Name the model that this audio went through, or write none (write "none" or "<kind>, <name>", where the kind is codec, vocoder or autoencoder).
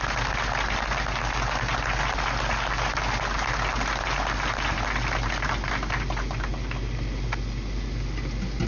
none